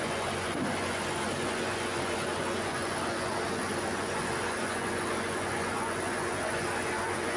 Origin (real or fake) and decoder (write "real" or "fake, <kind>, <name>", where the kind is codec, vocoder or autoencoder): fake, vocoder, Vocos